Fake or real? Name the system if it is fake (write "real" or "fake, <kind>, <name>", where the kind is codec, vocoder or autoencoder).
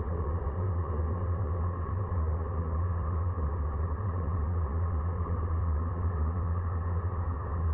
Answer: fake, vocoder, WaveNeXt